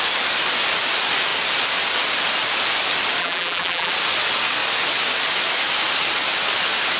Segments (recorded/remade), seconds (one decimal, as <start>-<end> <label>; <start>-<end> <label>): 0.0-3.2 recorded; 3.2-3.9 remade; 3.9-7.0 recorded